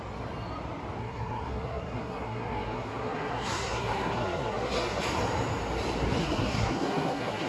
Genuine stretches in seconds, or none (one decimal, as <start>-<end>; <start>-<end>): 0.0-1.0; 5.0-6.2